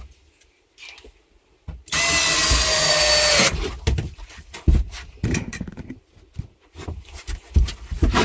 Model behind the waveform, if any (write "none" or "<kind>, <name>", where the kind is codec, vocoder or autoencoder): none